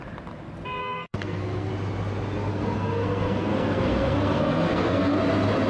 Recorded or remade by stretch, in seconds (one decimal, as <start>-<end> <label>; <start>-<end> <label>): 0.0-0.8 recorded; 0.8-1.7 remade; 1.7-2.5 recorded; 2.5-5.2 remade; 5.2-5.7 recorded